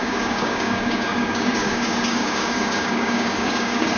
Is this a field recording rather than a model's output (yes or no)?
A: no